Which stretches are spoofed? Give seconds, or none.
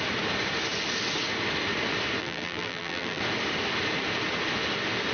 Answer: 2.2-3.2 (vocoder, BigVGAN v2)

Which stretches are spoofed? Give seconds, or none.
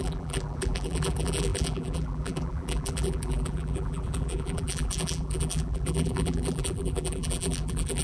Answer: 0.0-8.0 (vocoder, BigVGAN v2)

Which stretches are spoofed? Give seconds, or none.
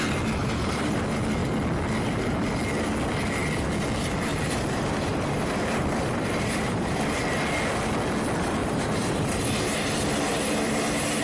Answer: 0.4-1.0 (vocoder, BigVGAN v2); 4.3-7.0; 8.6-10.7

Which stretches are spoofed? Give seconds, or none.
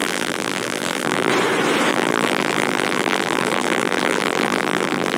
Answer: 0.0-1.3 (vocoder, BigVGAN v2); 1.9-5.2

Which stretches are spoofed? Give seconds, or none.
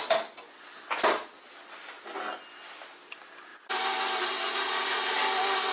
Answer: none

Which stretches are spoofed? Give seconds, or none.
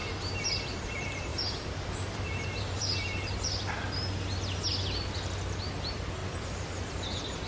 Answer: 1.3-3.7 (vocoder, BigVGAN v2)